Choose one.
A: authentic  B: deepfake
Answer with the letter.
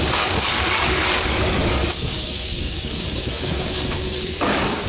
B